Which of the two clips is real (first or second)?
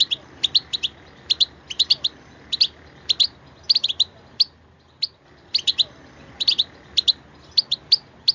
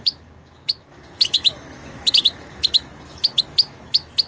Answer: first